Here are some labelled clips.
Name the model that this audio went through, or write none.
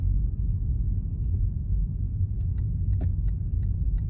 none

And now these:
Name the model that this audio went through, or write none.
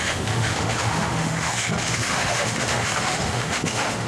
autoencoder, DAC-VAE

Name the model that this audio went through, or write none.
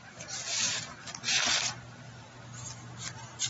none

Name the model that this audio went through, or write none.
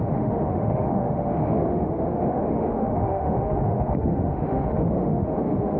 autoencoder, DAC-VAE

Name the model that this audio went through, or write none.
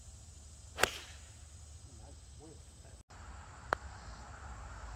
none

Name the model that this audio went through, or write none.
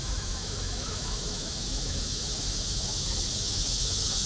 autoencoder, DAC-VAE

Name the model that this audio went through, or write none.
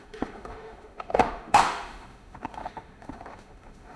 autoencoder, DAC-VAE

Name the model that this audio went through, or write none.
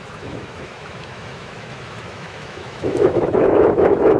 autoencoder, DAC-VAE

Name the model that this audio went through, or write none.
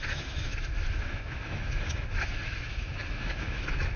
autoencoder, DAC-VAE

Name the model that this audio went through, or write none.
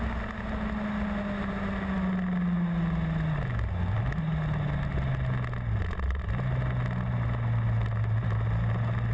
none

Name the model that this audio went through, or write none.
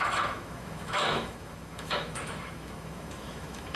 autoencoder, DAC-VAE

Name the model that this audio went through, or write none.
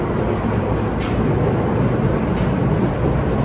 none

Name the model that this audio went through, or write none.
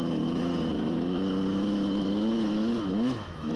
autoencoder, DAC-VAE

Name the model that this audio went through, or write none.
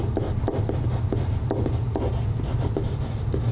none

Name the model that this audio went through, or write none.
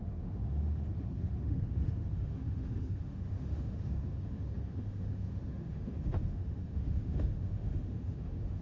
autoencoder, DAC-VAE